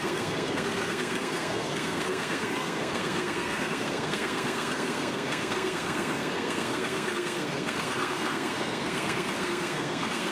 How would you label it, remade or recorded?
remade